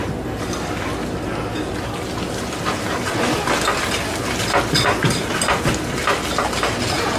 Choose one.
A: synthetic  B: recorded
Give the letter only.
B